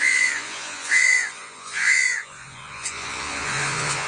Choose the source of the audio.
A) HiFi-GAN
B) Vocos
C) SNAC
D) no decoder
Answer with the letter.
B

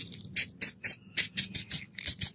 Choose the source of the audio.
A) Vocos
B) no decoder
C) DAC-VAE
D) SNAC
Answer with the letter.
B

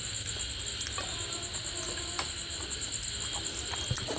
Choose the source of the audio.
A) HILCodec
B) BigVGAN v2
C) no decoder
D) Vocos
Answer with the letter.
C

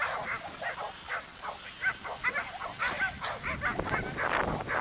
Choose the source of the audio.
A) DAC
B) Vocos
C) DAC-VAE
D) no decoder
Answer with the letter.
D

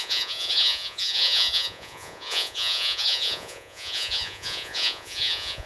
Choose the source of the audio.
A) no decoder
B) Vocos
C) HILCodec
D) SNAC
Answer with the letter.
B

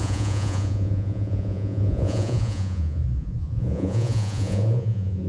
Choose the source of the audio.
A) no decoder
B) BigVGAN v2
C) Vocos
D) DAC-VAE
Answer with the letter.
C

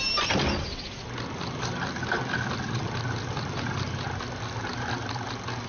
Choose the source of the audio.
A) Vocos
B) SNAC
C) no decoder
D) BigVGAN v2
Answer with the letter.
C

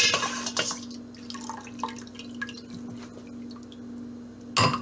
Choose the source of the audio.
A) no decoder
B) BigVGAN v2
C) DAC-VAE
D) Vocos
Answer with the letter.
A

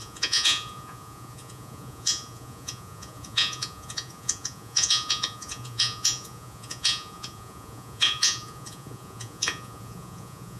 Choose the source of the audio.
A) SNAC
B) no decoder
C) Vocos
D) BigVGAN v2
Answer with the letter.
C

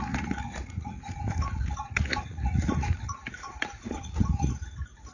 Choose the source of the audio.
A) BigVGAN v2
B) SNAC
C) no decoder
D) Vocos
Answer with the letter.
D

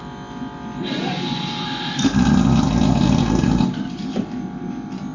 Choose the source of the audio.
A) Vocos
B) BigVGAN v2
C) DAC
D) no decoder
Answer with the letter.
D